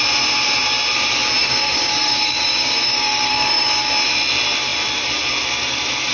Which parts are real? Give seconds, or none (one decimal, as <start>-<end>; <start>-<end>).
0.0-1.4; 3.9-6.1